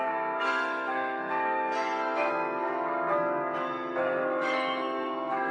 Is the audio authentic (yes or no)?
no